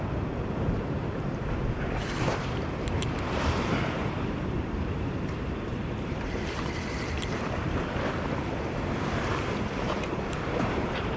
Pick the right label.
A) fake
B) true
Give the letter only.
A